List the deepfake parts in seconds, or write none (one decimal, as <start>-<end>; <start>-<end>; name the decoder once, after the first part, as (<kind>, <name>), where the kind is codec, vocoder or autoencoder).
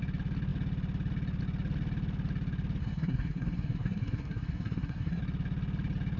2.8-5.2 (codec, SNAC)